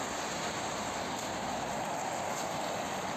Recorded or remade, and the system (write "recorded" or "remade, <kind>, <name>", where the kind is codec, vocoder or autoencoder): recorded